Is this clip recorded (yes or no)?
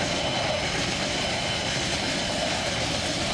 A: yes